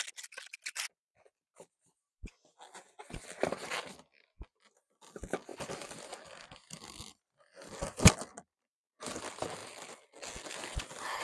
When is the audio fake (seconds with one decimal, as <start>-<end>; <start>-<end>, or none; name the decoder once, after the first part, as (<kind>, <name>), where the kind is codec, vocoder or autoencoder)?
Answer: none